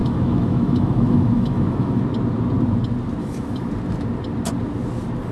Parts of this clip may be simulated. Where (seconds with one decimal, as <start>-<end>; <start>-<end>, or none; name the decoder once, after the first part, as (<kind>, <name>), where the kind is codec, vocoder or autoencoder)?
0.0-2.0 (autoencoder, DAC-VAE); 3.2-3.7